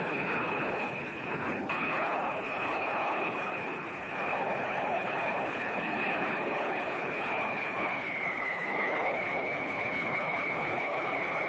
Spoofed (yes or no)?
yes